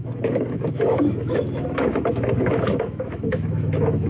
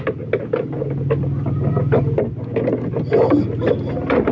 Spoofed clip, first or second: first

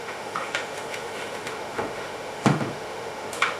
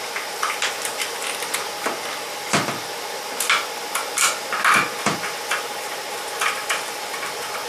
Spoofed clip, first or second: first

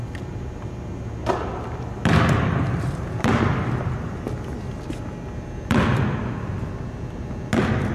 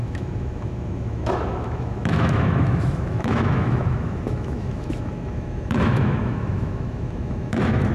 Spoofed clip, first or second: second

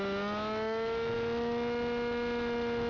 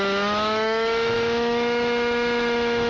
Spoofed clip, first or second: second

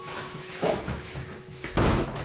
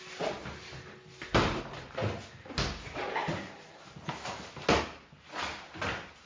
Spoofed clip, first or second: first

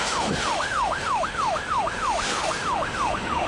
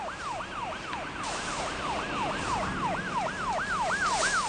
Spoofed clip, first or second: first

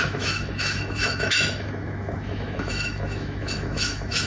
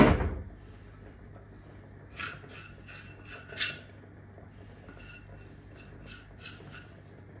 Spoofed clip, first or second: first